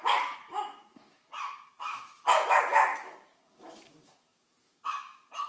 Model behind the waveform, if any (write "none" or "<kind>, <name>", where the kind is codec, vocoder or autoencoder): autoencoder, DAC-VAE